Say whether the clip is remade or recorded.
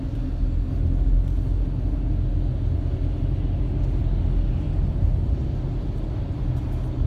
recorded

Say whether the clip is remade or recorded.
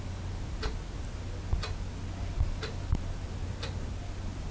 recorded